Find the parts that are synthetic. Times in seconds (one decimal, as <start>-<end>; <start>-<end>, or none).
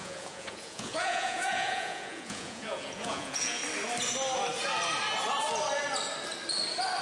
0.0-3.6